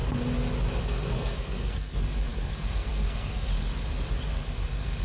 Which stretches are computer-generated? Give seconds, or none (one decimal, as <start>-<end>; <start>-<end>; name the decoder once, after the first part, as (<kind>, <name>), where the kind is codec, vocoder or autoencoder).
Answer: 0.8-3.5 (codec, SNAC); 4.3-5.0